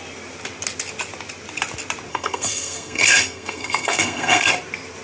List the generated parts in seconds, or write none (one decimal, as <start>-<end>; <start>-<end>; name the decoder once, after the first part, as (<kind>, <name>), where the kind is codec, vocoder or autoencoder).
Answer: 2.1-4.5 (codec, SNAC)